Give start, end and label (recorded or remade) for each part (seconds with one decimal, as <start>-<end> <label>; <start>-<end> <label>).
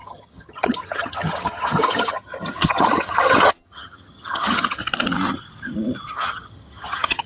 0.0-4.8 remade; 4.8-6.1 recorded; 6.1-7.3 remade